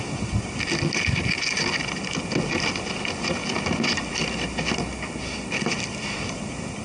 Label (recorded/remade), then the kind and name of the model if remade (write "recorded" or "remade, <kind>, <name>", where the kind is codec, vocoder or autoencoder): recorded